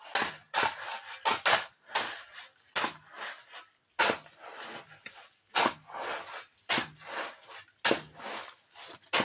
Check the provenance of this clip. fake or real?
real